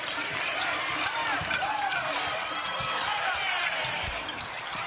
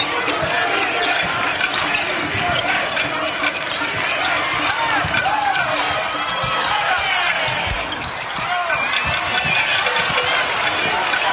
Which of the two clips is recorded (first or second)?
second